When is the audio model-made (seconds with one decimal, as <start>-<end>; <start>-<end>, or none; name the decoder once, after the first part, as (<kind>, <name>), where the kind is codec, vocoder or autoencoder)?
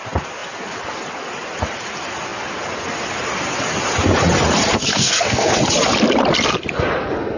4.9-5.5 (codec, SNAC)